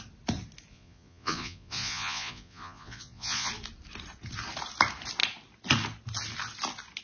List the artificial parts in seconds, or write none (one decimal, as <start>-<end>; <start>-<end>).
0.7-3.5